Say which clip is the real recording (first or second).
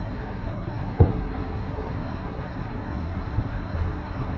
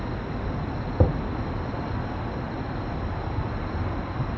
second